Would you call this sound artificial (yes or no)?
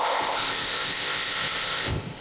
yes